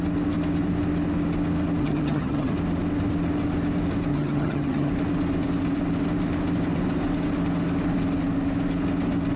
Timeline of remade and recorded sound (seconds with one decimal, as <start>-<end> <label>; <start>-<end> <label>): 0.0-1.8 recorded; 1.8-2.5 remade; 2.5-4.1 recorded; 4.1-4.9 remade; 4.9-9.4 recorded